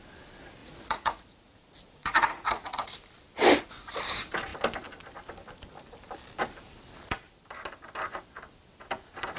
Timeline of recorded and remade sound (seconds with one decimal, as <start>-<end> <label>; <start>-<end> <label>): 0.0-0.6 recorded; 0.6-2.9 remade; 2.9-9.4 recorded